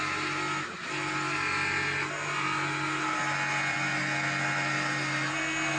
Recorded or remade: recorded